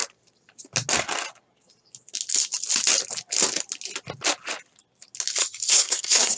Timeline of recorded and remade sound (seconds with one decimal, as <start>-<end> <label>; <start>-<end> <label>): 0.0-5.4 recorded; 5.4-6.4 remade